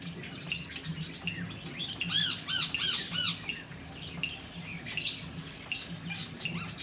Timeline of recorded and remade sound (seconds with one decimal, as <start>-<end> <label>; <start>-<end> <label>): 0.0-6.8 recorded